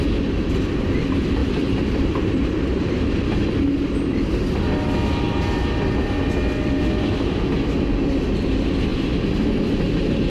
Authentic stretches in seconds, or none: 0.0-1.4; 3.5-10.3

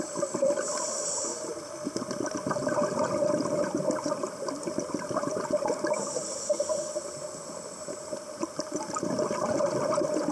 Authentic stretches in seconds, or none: none

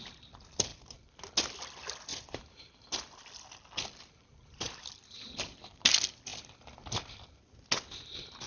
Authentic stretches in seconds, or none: 0.0-0.7; 1.3-2.1; 5.7-8.5

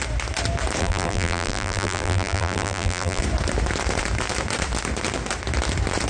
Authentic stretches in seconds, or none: 0.0-0.8; 3.2-6.1

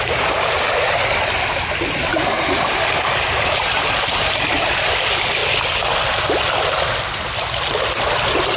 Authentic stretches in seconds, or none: 0.0-2.1; 4.6-8.6

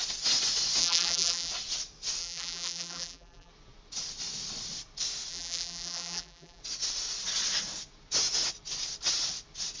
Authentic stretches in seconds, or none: 0.0-0.8; 1.5-2.2; 3.5-5.3; 6.6-9.8